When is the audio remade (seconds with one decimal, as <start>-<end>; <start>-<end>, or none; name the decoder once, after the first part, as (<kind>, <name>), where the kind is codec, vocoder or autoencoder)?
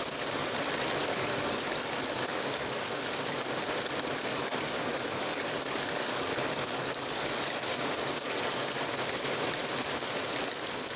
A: 1.1-3.3 (codec, DAC); 4.3-8.7